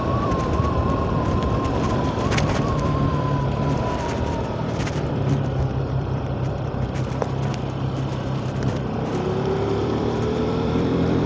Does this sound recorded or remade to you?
remade